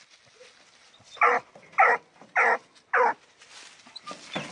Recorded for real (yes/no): yes